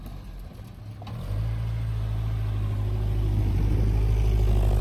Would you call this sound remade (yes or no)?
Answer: no